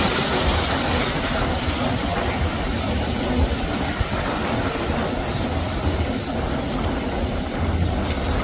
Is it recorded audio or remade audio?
recorded